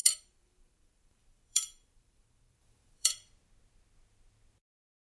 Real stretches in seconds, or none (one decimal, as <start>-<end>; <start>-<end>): 3.1-5.1